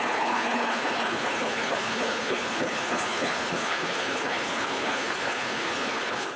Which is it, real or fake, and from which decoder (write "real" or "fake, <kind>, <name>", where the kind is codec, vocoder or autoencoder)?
fake, codec, HILCodec